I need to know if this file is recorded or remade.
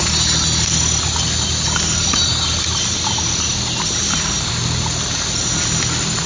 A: recorded